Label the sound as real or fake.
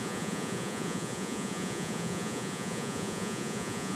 fake